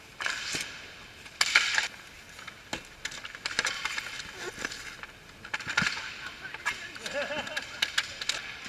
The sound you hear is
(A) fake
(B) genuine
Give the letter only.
B